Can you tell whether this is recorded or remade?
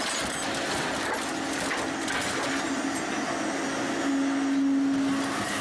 recorded